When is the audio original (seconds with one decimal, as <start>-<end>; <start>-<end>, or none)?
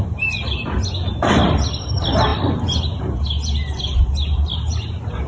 0.0-5.3